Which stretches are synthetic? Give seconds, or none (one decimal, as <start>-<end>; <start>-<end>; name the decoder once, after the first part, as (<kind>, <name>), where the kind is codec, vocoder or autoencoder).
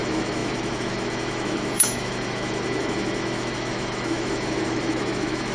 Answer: 0.0-5.5 (autoencoder, DAC-VAE)